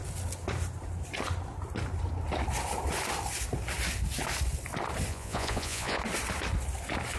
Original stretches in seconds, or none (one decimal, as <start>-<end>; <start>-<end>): 0.0-5.1; 6.0-7.2